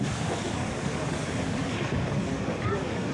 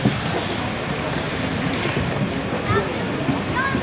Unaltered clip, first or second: second